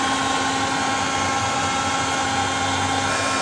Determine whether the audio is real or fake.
real